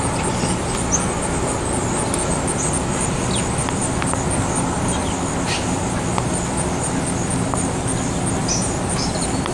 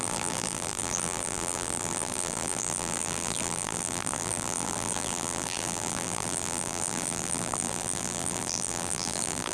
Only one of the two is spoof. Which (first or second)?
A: second